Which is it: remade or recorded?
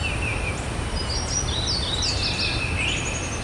recorded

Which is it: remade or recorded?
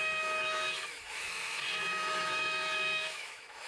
remade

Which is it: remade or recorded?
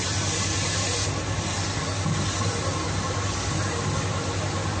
recorded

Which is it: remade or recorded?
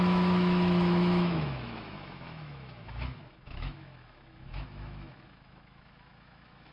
remade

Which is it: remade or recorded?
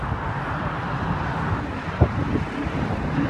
recorded